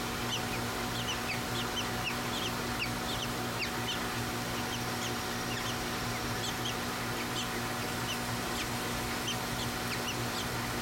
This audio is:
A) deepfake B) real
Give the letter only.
B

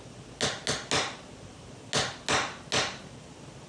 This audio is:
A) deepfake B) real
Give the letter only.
B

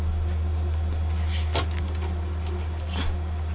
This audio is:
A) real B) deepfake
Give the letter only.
A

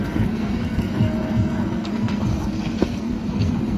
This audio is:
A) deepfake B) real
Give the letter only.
A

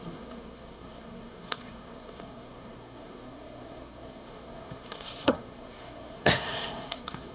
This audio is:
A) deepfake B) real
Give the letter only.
A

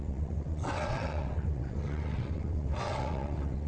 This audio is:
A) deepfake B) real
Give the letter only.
A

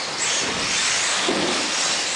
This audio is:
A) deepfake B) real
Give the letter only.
B